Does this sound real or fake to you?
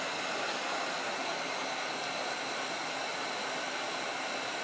real